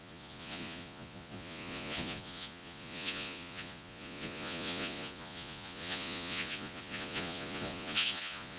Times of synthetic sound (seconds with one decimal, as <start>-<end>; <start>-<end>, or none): 0.0-8.6

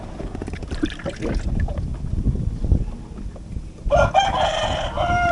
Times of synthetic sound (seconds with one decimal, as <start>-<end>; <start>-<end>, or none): none

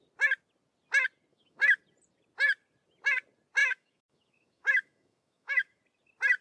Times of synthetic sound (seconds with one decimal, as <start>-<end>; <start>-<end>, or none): 1.3-1.8; 3.6-5.8

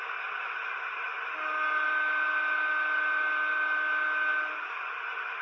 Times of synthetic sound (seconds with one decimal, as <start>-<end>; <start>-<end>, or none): none

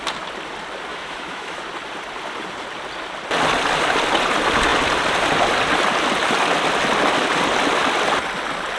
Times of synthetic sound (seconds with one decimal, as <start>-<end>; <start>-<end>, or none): 0.9-1.6

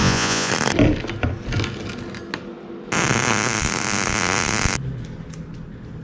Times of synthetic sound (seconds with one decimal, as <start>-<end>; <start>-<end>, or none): 0.0-0.5

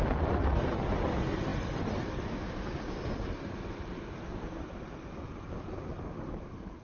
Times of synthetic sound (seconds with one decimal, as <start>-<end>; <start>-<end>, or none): none

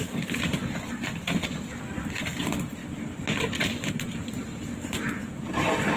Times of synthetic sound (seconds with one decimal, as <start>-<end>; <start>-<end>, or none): 0.0-0.6; 1.5-2.8; 5.5-6.0